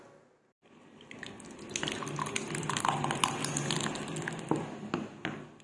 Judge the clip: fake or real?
real